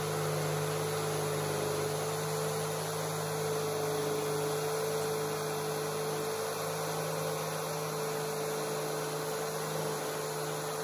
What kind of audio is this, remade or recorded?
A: recorded